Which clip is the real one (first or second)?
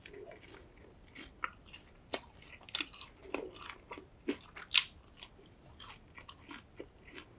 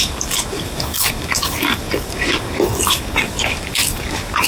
first